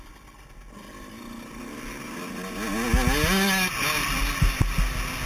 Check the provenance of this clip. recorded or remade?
recorded